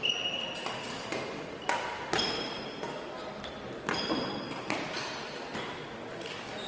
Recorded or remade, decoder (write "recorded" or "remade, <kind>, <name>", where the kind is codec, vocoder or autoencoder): recorded